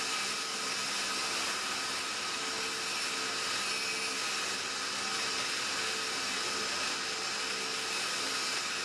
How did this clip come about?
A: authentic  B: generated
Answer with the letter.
A